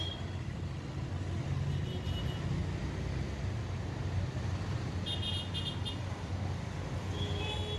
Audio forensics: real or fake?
real